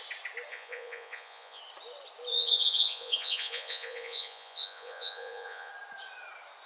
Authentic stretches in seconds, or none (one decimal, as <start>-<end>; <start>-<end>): 0.0-0.5; 1.6-2.3; 5.7-6.7